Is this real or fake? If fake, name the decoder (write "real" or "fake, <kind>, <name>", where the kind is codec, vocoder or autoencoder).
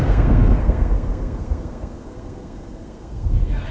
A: fake, codec, SNAC